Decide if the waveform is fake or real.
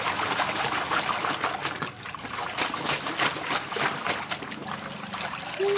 real